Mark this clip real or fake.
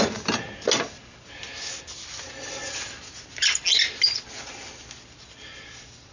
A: real